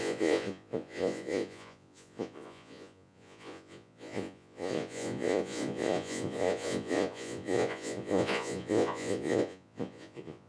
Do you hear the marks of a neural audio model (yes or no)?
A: yes